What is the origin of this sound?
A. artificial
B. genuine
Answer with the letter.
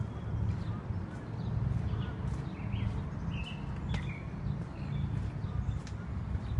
B